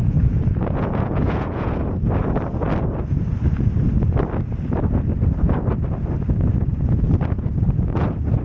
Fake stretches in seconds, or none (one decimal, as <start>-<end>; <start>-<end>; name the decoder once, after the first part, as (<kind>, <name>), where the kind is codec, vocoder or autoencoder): 0.0-1.8 (vocoder, Vocos)